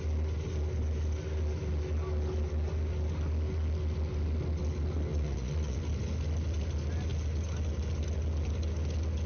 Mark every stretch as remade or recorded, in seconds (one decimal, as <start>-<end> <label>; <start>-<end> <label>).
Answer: 0.0-5.1 recorded; 5.1-5.8 remade; 5.8-9.3 recorded